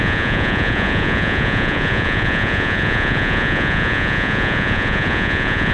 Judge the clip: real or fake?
fake